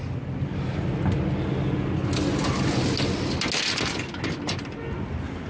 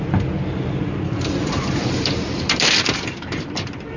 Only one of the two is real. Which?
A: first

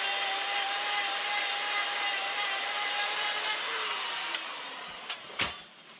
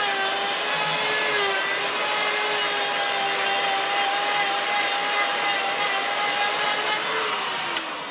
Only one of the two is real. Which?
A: second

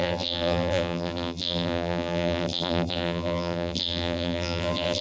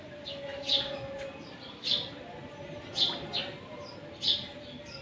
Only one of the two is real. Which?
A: second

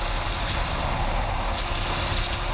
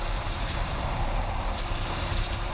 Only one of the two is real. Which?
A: first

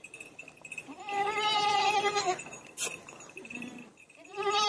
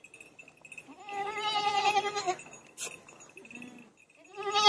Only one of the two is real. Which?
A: second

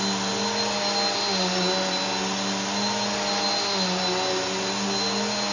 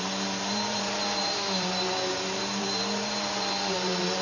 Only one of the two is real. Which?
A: first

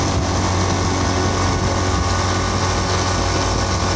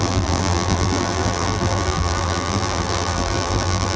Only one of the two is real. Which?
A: first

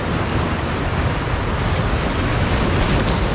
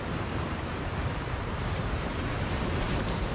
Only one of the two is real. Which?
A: first